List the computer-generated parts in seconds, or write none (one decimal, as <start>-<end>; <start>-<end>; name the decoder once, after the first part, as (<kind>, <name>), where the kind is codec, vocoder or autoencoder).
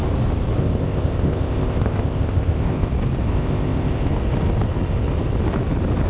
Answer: 0.6-2.9 (codec, ZipCodec); 3.3-4.1